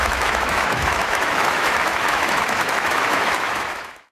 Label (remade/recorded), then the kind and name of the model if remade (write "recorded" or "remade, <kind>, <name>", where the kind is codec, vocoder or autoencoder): remade, autoencoder, DAC-VAE